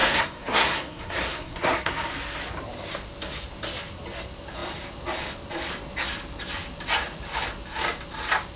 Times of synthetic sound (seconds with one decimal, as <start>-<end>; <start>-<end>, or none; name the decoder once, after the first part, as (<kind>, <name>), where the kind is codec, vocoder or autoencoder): 0.0-1.9 (codec, SNAC)

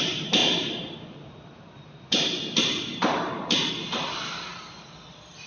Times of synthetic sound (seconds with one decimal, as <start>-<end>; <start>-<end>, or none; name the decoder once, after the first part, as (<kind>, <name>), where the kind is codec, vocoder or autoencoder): 0.4-3.7 (vocoder, BigVGAN v2)